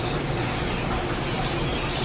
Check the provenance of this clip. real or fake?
real